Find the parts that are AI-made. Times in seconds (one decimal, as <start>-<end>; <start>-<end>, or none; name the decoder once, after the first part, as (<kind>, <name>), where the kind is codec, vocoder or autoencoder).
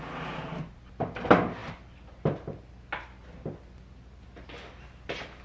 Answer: none